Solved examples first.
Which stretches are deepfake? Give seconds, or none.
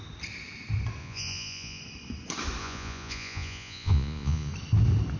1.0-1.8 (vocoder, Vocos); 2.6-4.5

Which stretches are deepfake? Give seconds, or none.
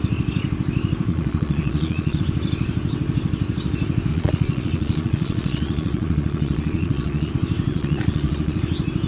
1.1-2.2 (vocoder, Vocos); 4.1-7.3; 7.7-8.6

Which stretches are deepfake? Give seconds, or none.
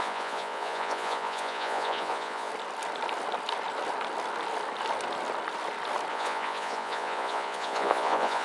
0.0-2.5 (vocoder, Vocos); 6.1-8.4